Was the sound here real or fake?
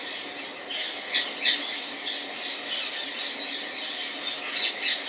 real